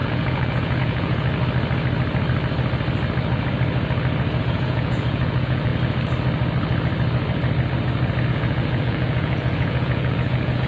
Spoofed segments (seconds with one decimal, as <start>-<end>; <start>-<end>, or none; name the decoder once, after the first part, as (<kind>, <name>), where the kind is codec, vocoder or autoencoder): 0.0-1.3 (vocoder, Vocos); 4.4-5.7; 8.3-10.7